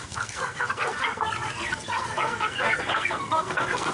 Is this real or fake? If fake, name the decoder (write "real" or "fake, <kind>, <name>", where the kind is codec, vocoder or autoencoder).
fake, codec, SNAC